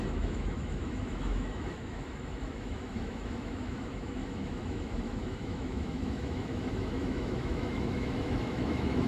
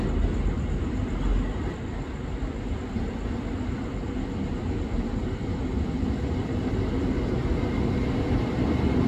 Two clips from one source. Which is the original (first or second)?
second